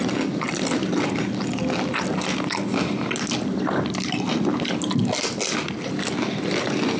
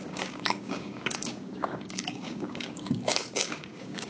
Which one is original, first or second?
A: first